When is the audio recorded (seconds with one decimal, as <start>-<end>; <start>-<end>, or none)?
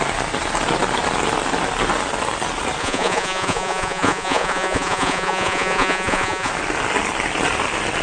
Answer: 0.0-2.8; 6.5-8.0